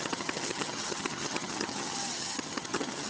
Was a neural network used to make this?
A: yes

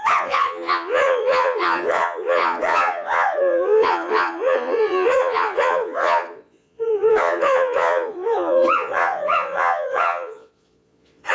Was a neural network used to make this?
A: yes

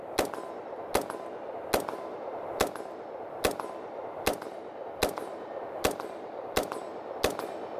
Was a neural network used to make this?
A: no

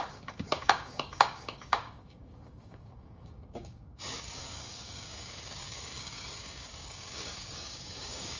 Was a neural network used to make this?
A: yes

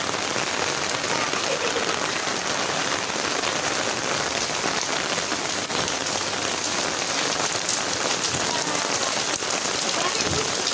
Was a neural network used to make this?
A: no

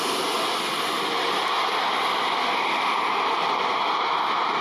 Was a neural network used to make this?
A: no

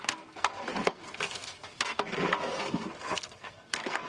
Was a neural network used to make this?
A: yes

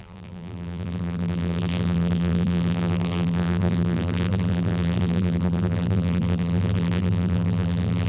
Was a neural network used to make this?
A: yes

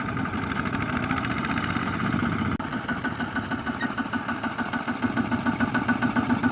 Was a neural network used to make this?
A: no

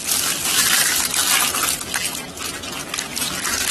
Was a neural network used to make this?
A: no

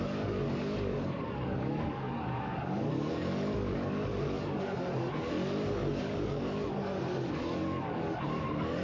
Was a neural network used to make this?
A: yes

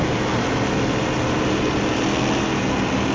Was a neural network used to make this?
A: no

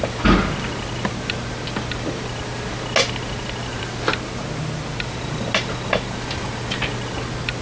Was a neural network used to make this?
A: no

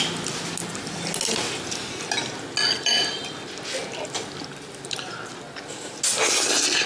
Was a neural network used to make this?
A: no